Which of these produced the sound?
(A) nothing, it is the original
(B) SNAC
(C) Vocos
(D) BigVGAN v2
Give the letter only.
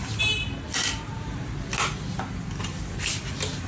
A